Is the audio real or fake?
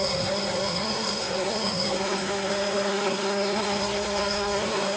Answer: fake